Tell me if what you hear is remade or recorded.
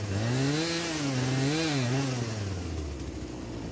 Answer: recorded